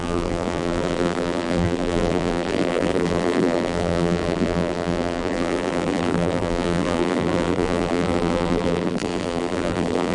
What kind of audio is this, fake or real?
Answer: fake